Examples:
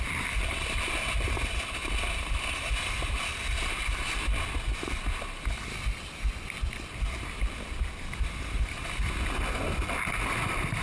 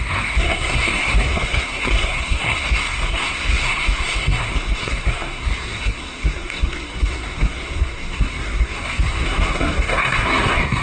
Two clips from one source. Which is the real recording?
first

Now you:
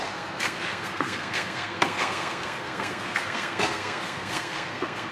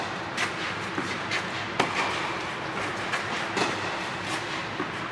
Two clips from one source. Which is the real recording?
second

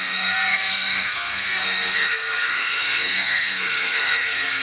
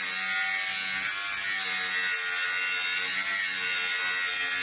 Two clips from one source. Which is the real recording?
second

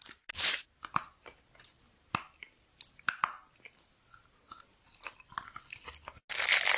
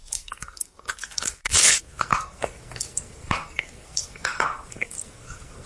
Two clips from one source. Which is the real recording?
first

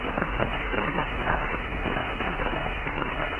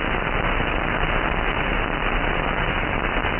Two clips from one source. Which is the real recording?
second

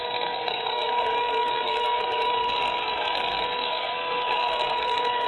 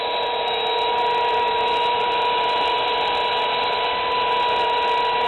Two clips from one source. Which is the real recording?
second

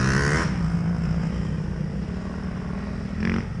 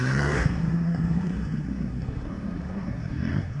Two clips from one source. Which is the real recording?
first